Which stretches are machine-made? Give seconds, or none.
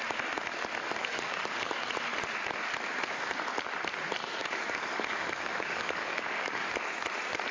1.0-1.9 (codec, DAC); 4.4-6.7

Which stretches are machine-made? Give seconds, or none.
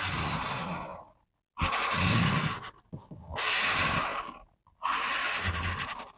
none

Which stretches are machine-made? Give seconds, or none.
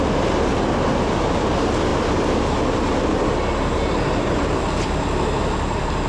none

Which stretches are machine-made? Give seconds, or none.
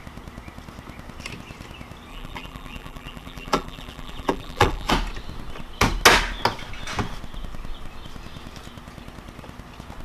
2.1-4.9 (vocoder, BigVGAN v2)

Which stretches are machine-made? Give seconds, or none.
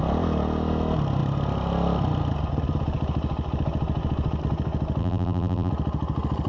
5.0-5.7 (vocoder, BigVGAN v2)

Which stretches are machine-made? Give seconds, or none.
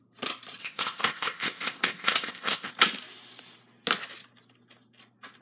0.6-2.7 (codec, ZipCodec)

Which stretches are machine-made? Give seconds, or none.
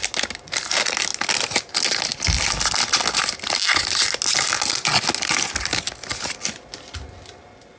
none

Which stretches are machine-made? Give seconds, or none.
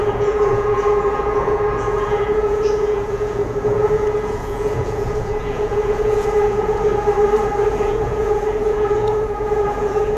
0.0-6.9 (vocoder, Vocos); 7.7-10.2